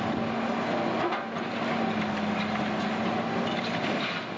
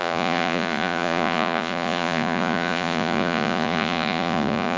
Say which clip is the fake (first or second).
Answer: second